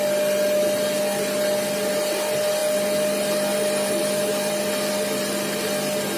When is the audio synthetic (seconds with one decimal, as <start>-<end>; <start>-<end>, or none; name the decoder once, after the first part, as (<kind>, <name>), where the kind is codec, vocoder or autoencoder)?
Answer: none